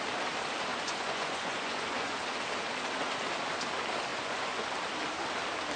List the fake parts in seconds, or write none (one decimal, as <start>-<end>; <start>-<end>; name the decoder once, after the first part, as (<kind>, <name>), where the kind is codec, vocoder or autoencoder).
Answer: 0.7-2.2 (vocoder, Vocos); 4.1-4.7